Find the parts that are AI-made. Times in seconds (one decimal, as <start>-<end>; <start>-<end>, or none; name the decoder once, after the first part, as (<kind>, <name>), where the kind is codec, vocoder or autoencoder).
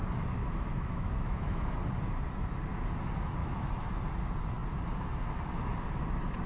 0.4-1.7 (autoencoder, DAC-VAE); 3.4-4.0